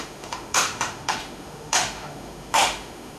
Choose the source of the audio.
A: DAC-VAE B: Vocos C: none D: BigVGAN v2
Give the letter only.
A